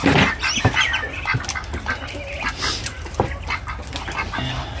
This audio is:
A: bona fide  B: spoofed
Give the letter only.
A